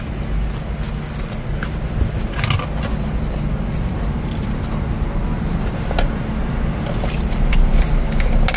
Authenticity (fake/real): real